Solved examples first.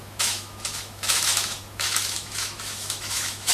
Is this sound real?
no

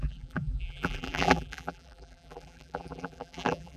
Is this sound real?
no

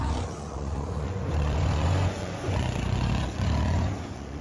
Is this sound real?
no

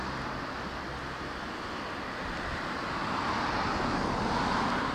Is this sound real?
yes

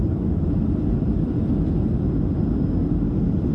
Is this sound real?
yes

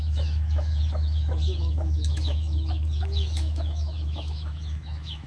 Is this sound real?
no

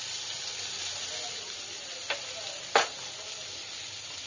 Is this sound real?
yes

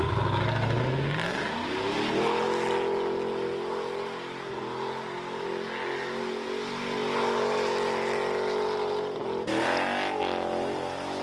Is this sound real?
yes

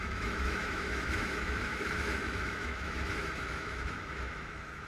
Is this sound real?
no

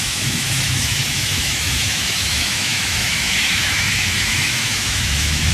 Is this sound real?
no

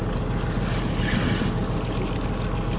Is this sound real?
yes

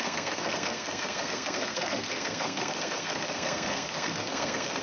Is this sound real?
no